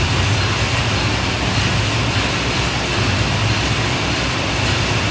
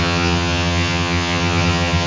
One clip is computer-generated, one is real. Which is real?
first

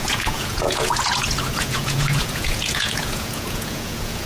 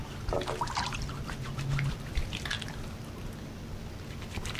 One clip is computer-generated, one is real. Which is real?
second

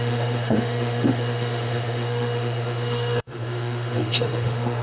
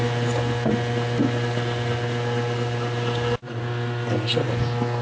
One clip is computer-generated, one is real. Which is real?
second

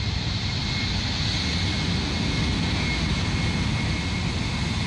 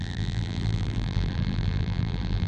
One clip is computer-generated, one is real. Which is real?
first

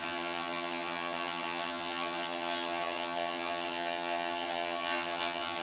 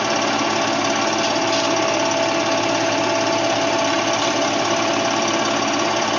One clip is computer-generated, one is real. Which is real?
second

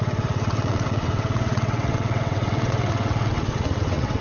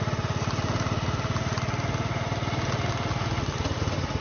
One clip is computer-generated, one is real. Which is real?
second